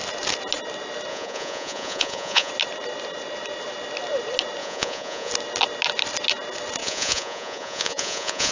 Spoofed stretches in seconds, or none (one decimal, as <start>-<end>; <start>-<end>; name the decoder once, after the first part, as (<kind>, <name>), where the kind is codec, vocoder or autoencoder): 1.1-2.5 (vocoder, Vocos); 4.6-5.3; 6.8-8.5